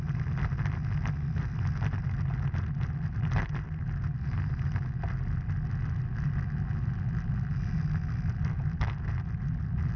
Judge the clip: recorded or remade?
recorded